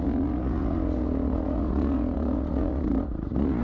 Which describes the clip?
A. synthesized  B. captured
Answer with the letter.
A